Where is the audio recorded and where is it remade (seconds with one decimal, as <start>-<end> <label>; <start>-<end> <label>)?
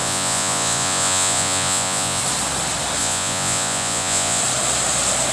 0.0-2.2 remade; 2.2-3.0 recorded; 3.0-4.4 remade; 4.4-5.3 recorded